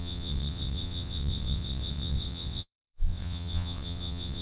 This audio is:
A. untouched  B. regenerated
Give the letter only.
B